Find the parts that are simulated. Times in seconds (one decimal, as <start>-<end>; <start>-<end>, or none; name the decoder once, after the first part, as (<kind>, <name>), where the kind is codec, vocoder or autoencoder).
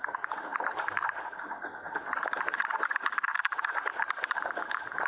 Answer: none